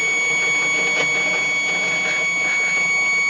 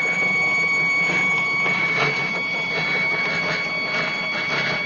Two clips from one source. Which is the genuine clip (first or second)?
first